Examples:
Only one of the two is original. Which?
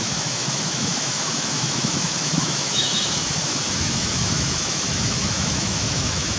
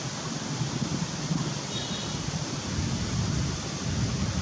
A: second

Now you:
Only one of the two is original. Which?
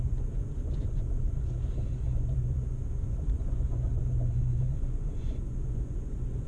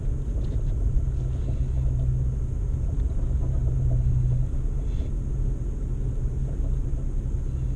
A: second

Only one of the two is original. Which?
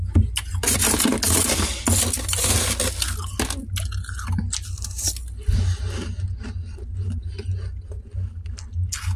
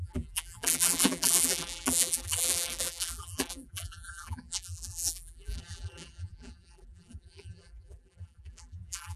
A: first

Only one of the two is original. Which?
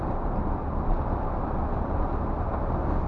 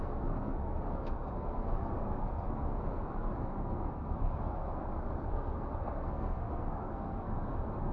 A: first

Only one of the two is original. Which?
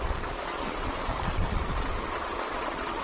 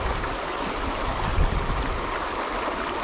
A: second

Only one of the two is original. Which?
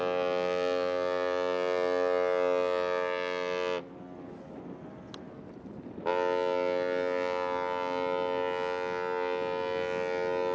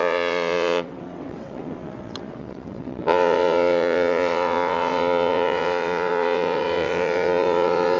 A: first